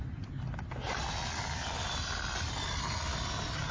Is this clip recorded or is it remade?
recorded